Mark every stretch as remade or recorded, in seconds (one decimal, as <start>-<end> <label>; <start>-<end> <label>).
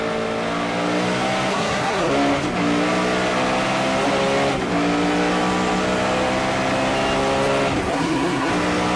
0.0-1.5 recorded; 1.5-2.1 remade; 2.1-7.9 recorded; 7.9-8.5 remade; 8.5-9.0 recorded